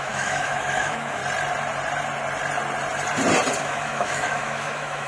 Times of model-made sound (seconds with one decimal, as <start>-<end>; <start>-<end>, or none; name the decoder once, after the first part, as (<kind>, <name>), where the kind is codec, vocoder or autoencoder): 0.0-1.2 (autoencoder, DAC-VAE); 3.6-5.1